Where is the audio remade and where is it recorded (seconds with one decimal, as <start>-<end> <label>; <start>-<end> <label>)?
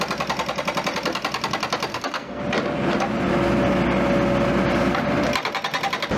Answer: 0.0-1.9 recorded; 1.9-2.4 remade; 2.4-6.2 recorded